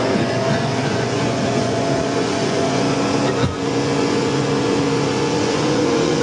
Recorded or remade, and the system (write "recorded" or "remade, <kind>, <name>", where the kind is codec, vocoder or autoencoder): remade, vocoder, Vocos